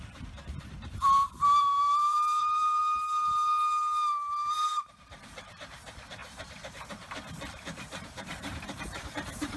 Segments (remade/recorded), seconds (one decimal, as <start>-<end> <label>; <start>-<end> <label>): 0.0-2.8 remade; 2.8-5.1 recorded; 5.1-9.6 remade